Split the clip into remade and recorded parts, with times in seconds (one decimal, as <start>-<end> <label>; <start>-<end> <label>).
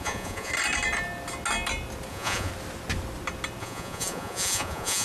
0.0-0.5 remade; 0.5-2.1 recorded; 2.1-2.5 remade; 2.5-3.6 recorded; 3.6-5.0 remade